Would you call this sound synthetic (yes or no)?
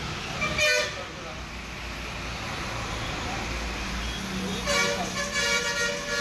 no